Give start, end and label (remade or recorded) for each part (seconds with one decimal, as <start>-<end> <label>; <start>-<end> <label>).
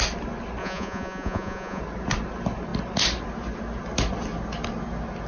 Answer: 0.0-0.6 recorded; 0.6-1.8 remade; 1.8-5.3 recorded